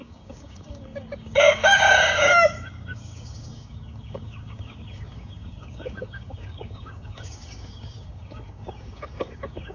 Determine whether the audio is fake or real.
fake